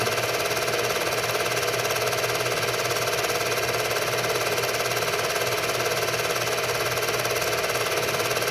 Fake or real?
real